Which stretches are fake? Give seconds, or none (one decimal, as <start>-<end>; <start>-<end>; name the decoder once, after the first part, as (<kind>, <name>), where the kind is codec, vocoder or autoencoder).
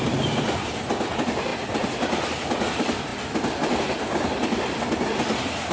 none